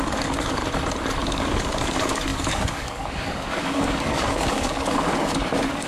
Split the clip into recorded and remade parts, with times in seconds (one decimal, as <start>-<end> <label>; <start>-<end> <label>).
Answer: 0.0-0.6 remade; 0.6-1.2 recorded; 1.2-5.9 remade